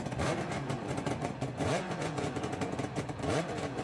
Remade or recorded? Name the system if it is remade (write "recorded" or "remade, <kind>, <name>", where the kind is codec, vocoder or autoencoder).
remade, vocoder, Vocos